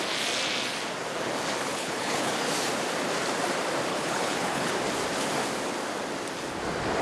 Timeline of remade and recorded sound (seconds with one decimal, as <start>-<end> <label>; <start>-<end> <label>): 0.0-1.7 recorded; 1.7-2.3 remade; 2.3-3.9 recorded; 3.9-4.7 remade; 4.7-7.0 recorded